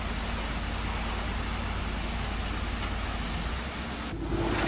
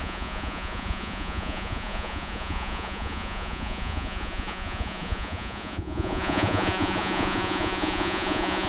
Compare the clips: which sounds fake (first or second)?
second